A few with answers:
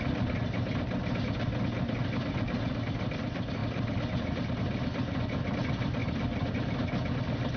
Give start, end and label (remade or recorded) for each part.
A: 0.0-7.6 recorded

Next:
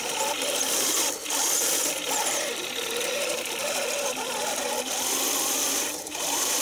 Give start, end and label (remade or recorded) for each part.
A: 0.0-6.6 remade